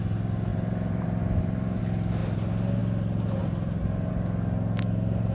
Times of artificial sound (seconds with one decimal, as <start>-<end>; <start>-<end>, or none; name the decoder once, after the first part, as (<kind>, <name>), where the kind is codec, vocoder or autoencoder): 0.5-1.8 (vocoder, BigVGAN v2); 3.4-4.1